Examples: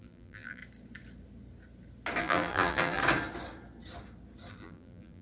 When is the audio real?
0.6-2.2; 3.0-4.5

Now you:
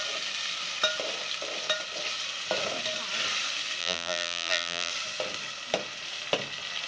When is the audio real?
0.0-3.8; 4.9-6.9

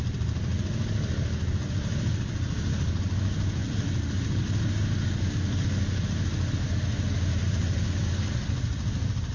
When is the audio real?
0.0-7.3; 7.9-9.3

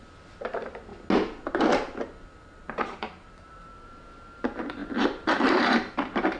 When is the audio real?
0.9-1.7

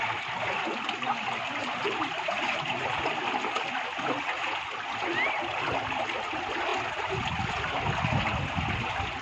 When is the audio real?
0.0-1.6; 3.1-9.2

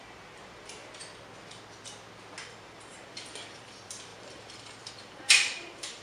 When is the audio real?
0.8-2.5

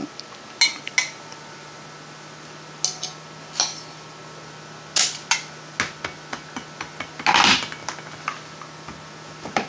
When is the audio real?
0.0-9.7

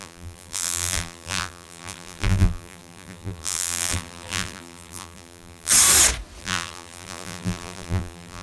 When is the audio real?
5.7-6.4